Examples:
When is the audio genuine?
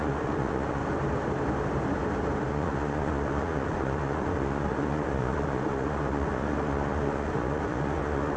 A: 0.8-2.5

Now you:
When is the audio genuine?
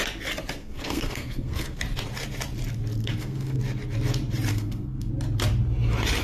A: 0.0-0.6; 1.8-3.0; 3.6-4.5; 5.1-6.2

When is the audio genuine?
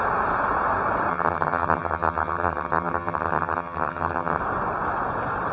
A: 0.0-1.1; 4.4-5.5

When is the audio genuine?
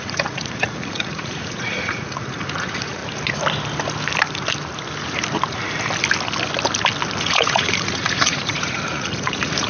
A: 3.0-7.2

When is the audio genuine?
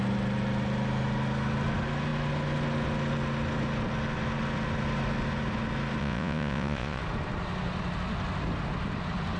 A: 0.0-6.0; 7.0-9.4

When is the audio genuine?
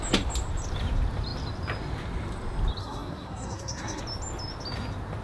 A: 0.0-2.8; 4.0-5.2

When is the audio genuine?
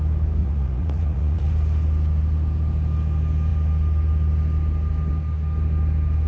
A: 0.0-0.4; 1.5-6.3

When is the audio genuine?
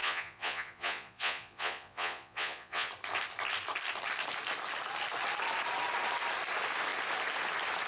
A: 2.9-7.9